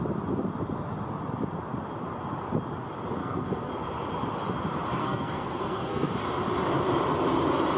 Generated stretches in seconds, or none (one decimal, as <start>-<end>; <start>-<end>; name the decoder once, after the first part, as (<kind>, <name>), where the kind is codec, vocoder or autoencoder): 3.2-3.7 (codec, SNAC); 5.0-6.1